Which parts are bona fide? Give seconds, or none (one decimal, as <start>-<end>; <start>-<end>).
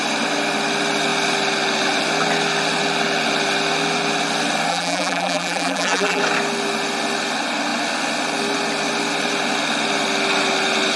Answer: 0.0-4.7; 6.2-11.0